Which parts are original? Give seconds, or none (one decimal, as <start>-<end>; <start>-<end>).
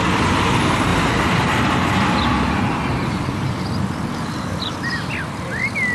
0.0-5.9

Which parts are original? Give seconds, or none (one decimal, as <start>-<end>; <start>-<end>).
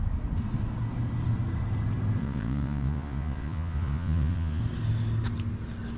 0.0-2.2; 4.6-6.0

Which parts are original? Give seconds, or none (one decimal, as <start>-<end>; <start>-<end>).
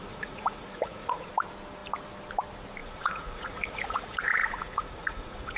1.3-2.8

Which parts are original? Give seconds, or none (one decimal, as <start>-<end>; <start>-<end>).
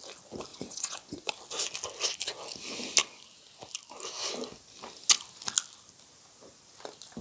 0.0-0.5; 1.3-7.2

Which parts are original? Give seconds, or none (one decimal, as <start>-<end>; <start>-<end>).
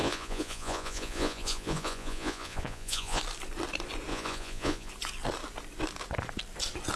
3.2-4.1; 4.9-7.0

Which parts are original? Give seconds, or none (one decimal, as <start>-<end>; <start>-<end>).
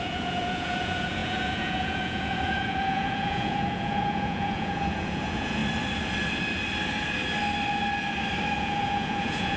5.6-8.6